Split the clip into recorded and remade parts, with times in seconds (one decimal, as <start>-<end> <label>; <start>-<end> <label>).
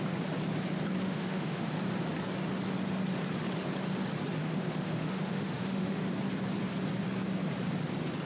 0.0-1.0 recorded; 1.0-1.7 remade; 1.7-4.4 recorded; 4.4-6.1 remade; 6.1-8.3 recorded